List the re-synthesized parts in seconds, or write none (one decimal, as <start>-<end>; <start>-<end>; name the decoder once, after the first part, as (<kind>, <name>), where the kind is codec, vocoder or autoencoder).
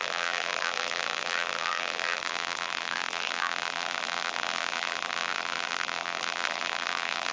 0.0-7.3 (vocoder, BigVGAN v2)